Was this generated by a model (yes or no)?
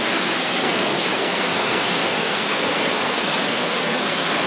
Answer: yes